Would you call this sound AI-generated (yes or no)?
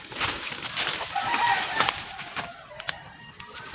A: no